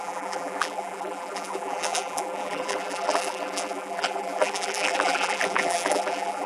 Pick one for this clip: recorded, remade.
remade